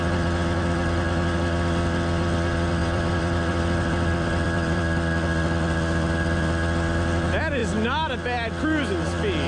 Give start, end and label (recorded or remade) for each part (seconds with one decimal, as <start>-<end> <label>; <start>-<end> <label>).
0.0-2.8 recorded; 2.8-4.8 remade; 4.8-9.5 recorded